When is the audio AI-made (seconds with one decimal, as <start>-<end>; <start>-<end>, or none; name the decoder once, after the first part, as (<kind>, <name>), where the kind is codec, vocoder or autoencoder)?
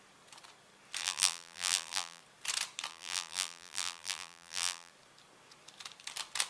1.0-2.2 (vocoder, BigVGAN v2); 2.9-4.9